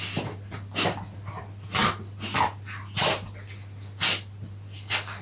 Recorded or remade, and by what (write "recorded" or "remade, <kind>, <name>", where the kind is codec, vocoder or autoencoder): recorded